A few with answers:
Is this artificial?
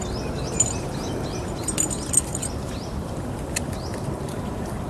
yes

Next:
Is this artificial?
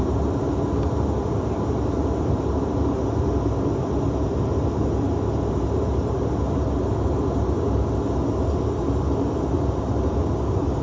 no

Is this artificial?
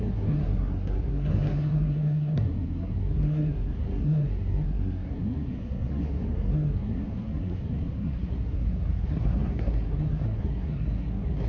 yes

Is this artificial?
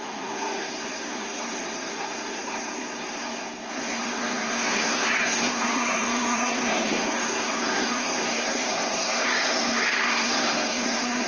yes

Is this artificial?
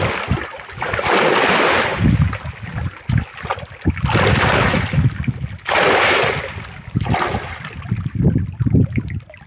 no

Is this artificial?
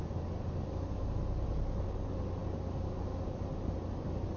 no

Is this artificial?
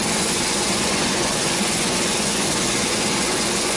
yes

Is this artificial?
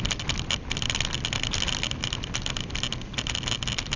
no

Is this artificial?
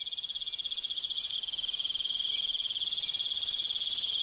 no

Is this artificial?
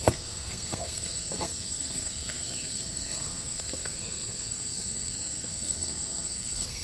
yes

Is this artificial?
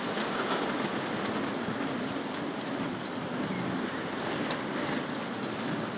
no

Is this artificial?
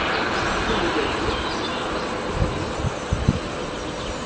no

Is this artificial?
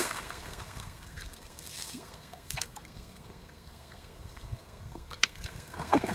yes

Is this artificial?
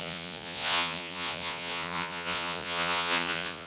yes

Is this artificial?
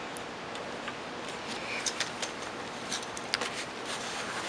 no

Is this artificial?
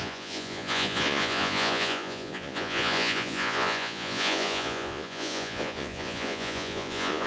yes